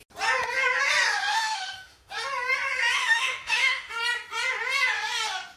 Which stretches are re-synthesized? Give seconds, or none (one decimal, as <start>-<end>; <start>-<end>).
1.3-2.1; 3.0-3.9